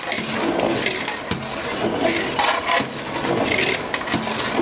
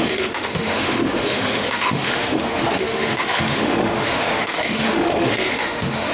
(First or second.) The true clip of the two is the first